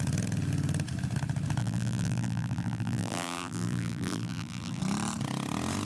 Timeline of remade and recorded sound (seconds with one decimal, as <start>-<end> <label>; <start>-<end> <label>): 0.0-1.6 recorded; 1.6-4.8 remade; 4.8-5.8 recorded